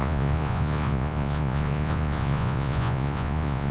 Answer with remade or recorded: remade